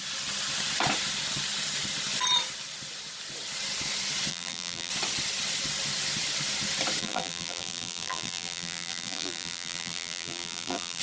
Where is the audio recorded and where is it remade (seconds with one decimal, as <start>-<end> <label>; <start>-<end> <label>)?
0.0-4.3 recorded; 4.3-4.9 remade; 4.9-7.0 recorded; 7.0-11.0 remade